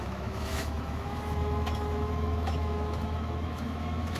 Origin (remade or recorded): remade